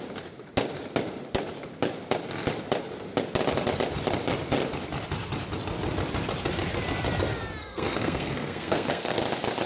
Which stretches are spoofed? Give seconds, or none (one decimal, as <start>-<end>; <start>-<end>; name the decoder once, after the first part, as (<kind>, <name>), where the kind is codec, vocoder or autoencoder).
7.6-9.2 (codec, SNAC)